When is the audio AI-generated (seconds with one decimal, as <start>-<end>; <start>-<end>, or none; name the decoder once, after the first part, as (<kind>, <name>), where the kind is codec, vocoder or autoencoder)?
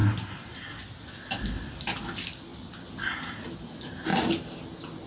0.0-0.6 (vocoder, BigVGAN v2)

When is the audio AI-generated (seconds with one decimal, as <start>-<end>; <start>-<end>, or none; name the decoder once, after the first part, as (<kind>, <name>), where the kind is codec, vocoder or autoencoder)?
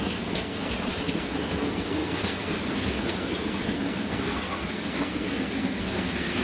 0.0-6.4 (codec, SNAC)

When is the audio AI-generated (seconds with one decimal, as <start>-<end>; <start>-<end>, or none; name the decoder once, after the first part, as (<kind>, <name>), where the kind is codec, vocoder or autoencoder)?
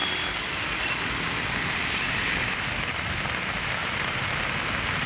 3.8-4.4 (vocoder, BigVGAN v2)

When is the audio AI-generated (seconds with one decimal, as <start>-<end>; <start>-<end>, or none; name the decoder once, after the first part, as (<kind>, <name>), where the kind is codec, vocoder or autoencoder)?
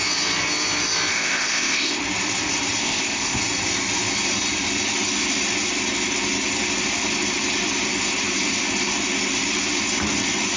1.1-2.0 (codec, ZipCodec); 2.8-3.4